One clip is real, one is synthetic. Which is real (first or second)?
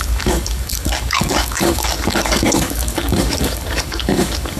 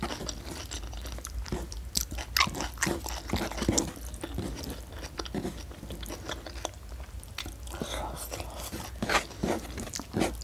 second